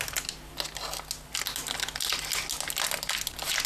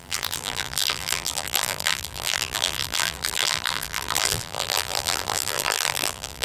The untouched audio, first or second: first